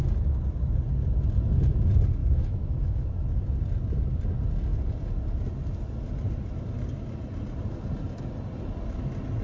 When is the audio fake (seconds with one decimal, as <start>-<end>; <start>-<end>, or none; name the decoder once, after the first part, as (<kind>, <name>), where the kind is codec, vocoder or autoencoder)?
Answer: 2.2-3.4 (autoencoder, DAC-VAE)